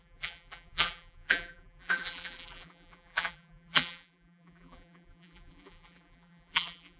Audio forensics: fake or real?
fake